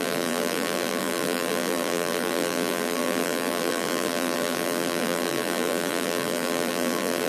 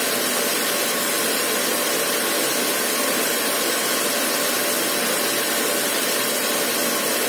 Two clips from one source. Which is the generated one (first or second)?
first